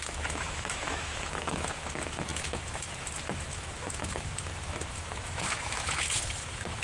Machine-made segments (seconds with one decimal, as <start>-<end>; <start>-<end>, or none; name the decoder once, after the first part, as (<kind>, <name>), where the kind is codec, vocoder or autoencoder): 0.0-6.8 (autoencoder, DAC-VAE)